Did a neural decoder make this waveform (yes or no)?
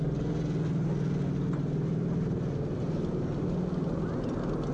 no